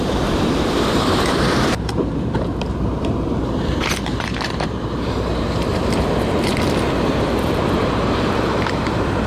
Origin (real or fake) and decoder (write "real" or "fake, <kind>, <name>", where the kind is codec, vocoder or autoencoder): fake, vocoder, BigVGAN v2